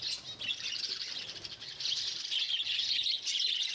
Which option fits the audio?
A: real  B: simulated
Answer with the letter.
A